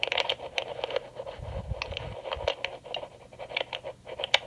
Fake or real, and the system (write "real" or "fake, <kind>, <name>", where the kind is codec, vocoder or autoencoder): real